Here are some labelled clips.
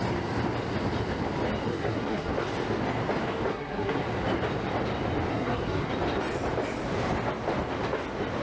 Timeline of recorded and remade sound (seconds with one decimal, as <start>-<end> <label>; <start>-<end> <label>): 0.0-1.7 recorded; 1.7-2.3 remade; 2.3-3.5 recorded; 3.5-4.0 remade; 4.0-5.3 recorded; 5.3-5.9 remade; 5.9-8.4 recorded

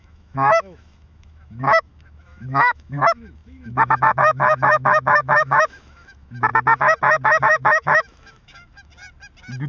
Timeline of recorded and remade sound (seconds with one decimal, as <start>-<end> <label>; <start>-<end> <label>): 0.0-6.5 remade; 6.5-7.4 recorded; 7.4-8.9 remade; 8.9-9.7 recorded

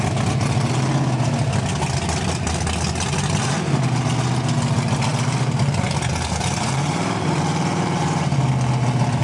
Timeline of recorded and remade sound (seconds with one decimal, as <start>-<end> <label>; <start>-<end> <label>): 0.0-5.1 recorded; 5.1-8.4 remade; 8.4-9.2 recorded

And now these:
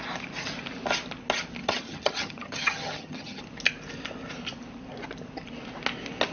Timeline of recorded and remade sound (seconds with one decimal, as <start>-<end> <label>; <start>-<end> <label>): 0.0-1.6 recorded; 1.6-3.4 remade; 3.4-6.3 recorded

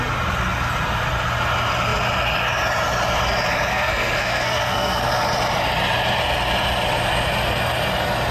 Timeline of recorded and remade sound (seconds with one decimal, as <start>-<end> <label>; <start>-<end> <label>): 0.0-3.7 recorded; 3.7-5.1 remade; 5.1-8.3 recorded

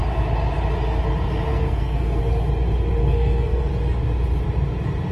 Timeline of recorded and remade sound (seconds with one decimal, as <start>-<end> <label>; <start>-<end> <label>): 0.0-1.5 recorded; 1.5-2.2 remade; 2.2-3.0 recorded; 3.0-3.7 remade; 3.7-5.1 recorded